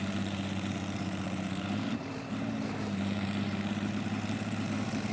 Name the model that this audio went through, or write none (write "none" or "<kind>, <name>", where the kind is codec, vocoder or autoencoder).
vocoder, BigVGAN v2